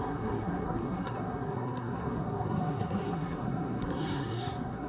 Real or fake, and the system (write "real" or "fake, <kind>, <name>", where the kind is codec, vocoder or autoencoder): fake, codec, SNAC